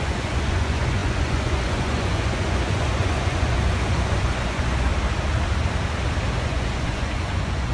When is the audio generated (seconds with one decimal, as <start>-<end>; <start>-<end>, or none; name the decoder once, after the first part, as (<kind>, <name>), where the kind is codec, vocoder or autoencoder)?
0.0-4.9 (vocoder, Vocos); 6.4-7.7